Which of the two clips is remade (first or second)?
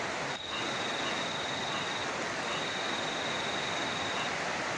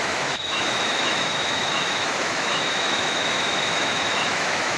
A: second